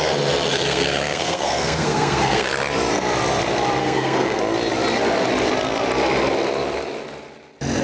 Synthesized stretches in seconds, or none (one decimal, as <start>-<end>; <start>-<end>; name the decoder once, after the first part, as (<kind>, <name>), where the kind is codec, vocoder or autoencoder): 0.5-2.5 (codec, SNAC); 3.8-4.4